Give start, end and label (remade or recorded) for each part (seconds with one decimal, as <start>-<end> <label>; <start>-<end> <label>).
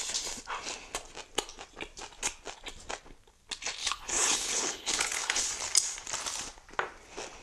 0.0-3.8 recorded; 3.8-5.5 remade; 5.5-7.4 recorded